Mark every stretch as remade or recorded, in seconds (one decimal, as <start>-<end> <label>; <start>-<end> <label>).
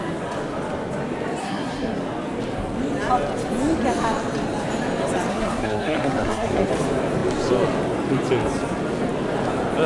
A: 0.0-1.4 recorded; 1.4-2.0 remade; 2.0-5.3 recorded; 5.3-6.7 remade; 6.7-9.9 recorded